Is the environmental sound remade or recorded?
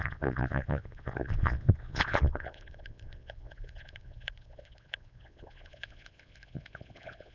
remade